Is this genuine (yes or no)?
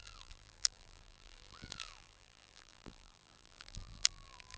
no